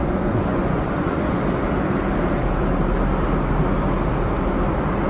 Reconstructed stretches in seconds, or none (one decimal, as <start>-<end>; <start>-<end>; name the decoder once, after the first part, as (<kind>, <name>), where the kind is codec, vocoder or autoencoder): 0.0-1.4 (vocoder, Vocos)

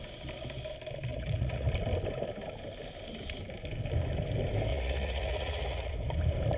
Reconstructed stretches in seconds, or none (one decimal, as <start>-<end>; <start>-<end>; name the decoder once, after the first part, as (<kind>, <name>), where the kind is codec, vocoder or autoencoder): 1.1-1.7 (vocoder, Vocos); 4.7-5.9

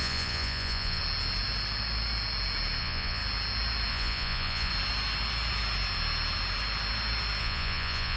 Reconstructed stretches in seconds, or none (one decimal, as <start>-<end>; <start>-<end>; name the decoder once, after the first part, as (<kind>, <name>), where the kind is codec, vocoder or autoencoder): 0.0-1.0 (vocoder, Vocos); 2.8-3.2; 3.9-4.7; 7.4-8.2

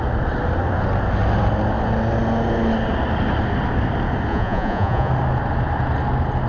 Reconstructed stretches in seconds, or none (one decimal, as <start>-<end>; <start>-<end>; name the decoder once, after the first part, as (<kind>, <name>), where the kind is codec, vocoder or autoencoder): 4.3-5.1 (vocoder, Vocos)

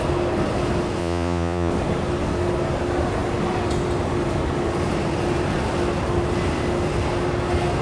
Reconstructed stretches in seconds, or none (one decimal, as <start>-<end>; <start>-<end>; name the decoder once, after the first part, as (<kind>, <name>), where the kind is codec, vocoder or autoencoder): 1.0-1.7 (vocoder, Vocos)

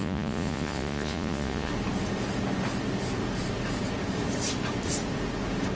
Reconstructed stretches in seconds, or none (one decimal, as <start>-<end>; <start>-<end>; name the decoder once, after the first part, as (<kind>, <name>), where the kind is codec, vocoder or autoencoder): 0.0-1.7 (vocoder, Vocos)

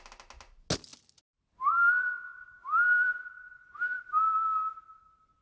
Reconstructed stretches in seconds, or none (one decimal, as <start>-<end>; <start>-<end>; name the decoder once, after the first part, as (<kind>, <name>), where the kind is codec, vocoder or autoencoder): none